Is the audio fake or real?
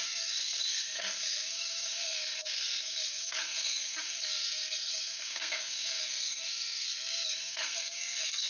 fake